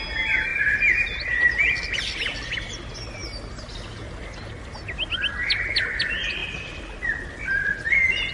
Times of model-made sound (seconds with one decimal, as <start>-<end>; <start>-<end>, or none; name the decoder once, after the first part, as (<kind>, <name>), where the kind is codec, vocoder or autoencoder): none